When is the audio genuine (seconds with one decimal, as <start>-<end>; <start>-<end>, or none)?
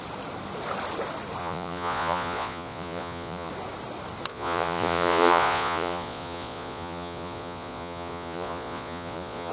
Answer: 0.0-1.4; 3.5-4.3